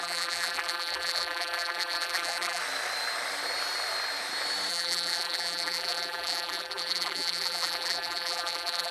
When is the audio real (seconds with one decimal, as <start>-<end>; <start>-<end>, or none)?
2.6-4.7